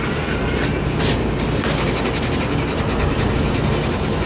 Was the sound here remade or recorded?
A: recorded